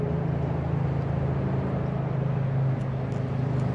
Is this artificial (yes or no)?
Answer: no